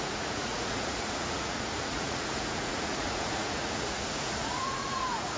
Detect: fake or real fake